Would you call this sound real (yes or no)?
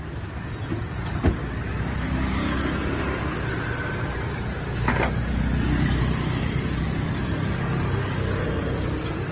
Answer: yes